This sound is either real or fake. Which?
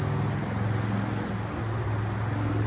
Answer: real